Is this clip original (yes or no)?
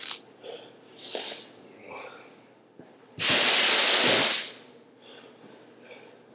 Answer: yes